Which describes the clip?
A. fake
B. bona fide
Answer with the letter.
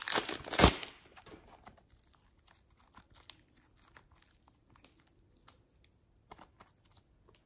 B